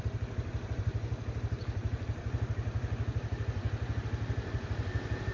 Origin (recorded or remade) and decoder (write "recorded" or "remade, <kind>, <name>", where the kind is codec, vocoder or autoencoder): recorded